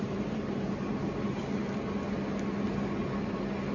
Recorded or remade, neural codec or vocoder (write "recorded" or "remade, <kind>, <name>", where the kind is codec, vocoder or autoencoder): recorded